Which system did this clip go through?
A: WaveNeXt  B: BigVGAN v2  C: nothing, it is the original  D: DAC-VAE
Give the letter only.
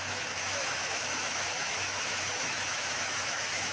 D